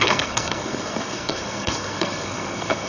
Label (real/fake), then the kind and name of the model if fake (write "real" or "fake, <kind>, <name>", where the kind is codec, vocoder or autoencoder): fake, codec, SNAC